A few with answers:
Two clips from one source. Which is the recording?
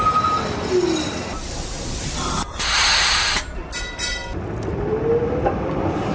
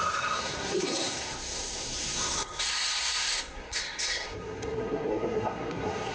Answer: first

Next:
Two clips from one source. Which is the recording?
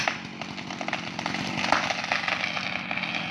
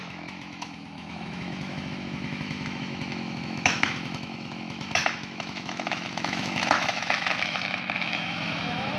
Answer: first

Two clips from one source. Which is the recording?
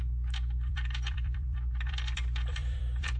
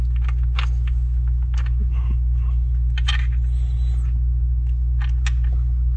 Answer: second